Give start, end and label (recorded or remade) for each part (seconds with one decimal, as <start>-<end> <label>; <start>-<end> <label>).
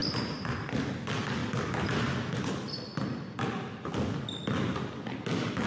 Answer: 0.0-5.7 recorded